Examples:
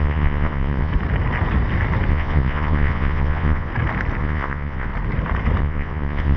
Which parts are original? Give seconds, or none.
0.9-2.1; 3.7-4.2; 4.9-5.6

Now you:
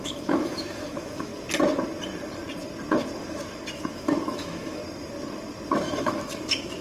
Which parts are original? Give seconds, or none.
1.3-3.7; 4.8-5.8

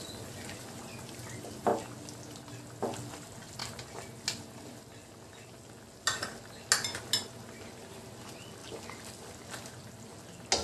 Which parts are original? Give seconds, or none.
0.0-8.6; 9.8-10.6

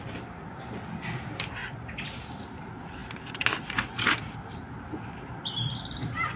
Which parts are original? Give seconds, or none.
0.0-6.4

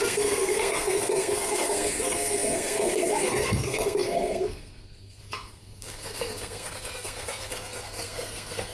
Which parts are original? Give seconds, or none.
none